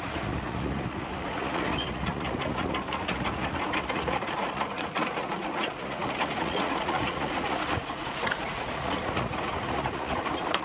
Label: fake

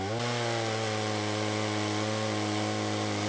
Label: real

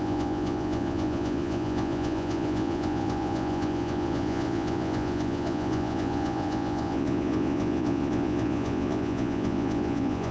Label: fake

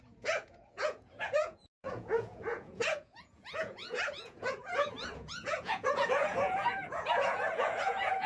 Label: fake